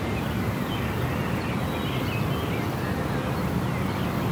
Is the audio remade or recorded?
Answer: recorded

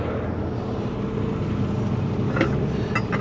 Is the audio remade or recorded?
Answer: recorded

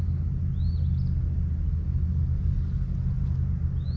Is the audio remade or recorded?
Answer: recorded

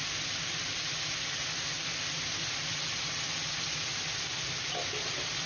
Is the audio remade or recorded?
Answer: recorded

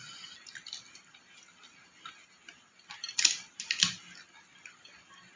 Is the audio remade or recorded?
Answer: recorded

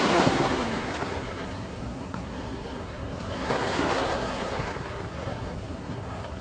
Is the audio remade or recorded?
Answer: remade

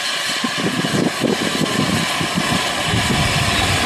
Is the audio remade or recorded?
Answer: recorded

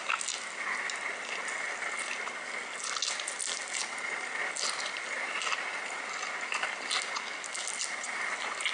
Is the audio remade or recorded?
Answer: recorded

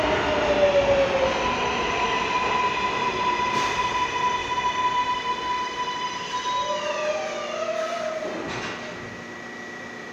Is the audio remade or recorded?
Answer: recorded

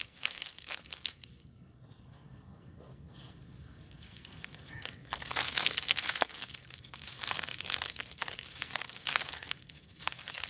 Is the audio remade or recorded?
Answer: remade